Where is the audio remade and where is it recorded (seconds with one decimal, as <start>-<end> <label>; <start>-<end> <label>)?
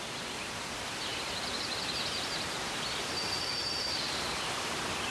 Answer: 0.0-5.1 recorded